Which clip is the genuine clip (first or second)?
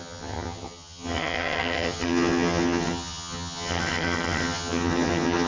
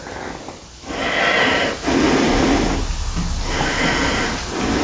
second